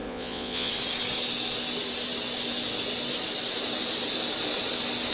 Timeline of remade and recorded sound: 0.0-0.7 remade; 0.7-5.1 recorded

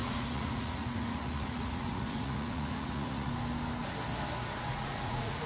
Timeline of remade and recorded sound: 0.0-3.3 remade; 3.3-4.7 recorded; 4.7-5.5 remade

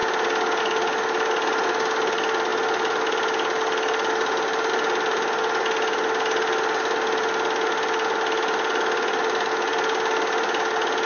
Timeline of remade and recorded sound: 0.0-11.1 recorded

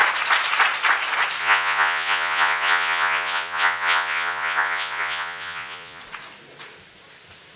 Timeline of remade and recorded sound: 0.0-1.4 recorded; 1.4-6.0 remade; 6.0-7.6 recorded

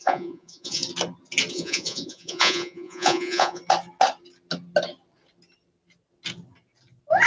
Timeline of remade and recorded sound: 0.0-0.8 remade; 0.8-1.5 recorded; 1.5-3.6 remade; 3.6-7.3 recorded